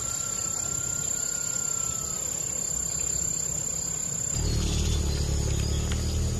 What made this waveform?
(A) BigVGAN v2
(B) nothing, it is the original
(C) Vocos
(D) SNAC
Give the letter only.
B